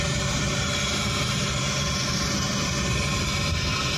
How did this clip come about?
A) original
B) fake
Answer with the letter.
A